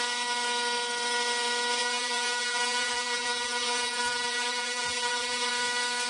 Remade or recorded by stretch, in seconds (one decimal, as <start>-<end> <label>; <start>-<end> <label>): 0.0-1.8 recorded; 1.8-5.5 remade; 5.5-6.1 recorded